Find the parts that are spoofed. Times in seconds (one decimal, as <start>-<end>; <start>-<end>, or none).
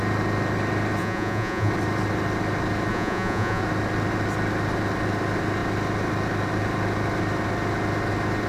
1.0-1.7; 2.9-3.6